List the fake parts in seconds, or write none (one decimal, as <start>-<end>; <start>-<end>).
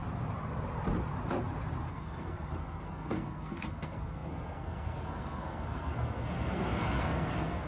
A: 1.9-7.7